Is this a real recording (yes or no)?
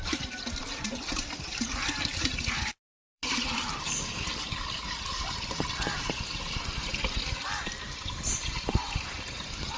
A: no